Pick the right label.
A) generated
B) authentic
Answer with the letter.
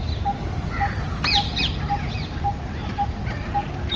B